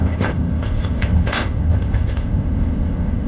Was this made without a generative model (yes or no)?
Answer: no